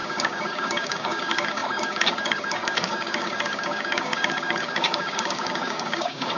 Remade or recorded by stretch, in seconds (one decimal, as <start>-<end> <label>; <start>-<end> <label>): 0.0-6.4 remade